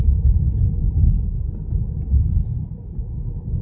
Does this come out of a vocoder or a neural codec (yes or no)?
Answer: no